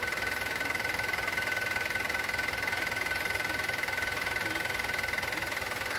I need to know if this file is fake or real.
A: real